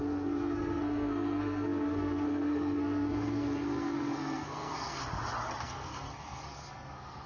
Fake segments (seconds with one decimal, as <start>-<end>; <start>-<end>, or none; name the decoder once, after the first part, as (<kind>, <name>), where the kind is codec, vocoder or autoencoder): 0.0-5.0 (codec, SNAC); 5.6-7.3